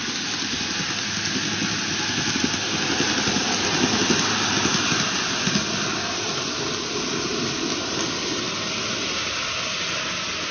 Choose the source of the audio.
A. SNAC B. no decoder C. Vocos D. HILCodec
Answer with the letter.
B